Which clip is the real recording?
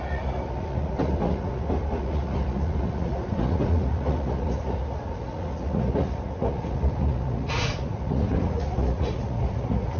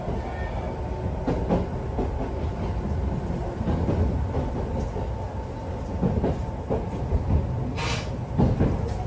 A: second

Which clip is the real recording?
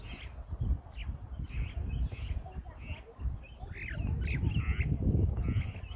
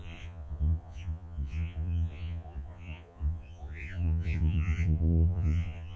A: first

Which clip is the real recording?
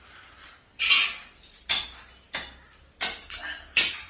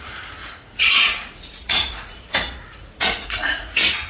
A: first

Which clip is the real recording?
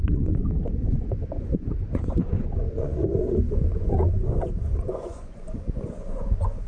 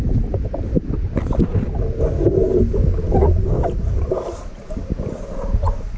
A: second